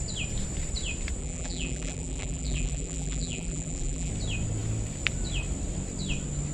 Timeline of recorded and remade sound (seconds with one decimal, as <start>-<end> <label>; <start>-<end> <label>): 0.0-1.2 recorded; 1.2-4.1 remade; 4.1-6.5 recorded